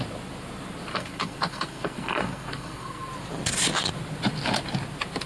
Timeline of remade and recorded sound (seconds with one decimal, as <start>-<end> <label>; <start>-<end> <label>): 0.0-0.9 recorded; 0.9-3.1 remade; 3.1-5.3 recorded